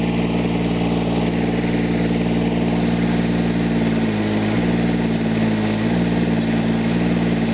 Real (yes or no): yes